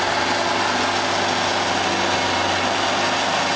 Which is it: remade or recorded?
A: recorded